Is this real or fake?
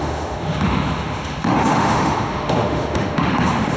fake